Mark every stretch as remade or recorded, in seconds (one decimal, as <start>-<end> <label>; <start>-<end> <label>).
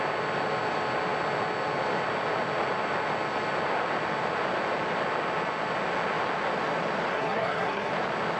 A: 0.0-7.1 recorded; 7.1-7.9 remade; 7.9-8.4 recorded